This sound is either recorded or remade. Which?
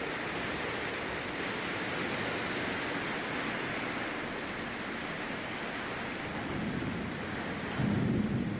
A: recorded